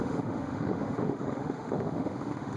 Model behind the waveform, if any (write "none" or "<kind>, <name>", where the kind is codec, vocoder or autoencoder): autoencoder, DAC-VAE